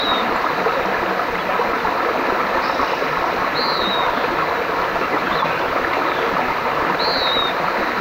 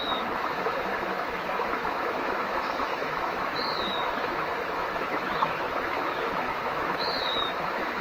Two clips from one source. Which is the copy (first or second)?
second